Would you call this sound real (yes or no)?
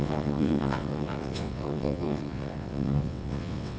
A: no